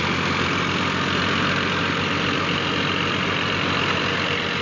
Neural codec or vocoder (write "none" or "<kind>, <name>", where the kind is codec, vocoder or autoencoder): none